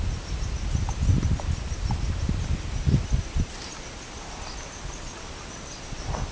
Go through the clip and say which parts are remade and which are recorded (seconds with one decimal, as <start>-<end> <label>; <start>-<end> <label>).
0.0-6.3 recorded

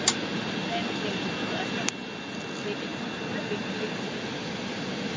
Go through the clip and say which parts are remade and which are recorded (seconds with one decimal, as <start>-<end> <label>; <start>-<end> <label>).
0.0-5.2 recorded

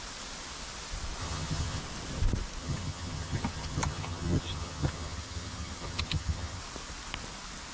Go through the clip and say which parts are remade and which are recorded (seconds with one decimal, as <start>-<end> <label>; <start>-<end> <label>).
0.0-1.2 recorded; 1.2-1.8 remade; 1.8-2.6 recorded; 2.6-6.6 remade; 6.6-7.7 recorded